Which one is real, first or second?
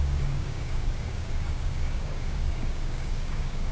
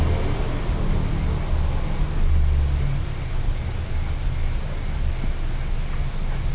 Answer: second